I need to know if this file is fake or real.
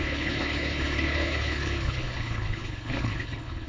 fake